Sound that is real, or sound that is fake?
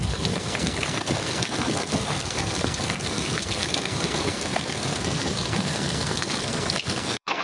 fake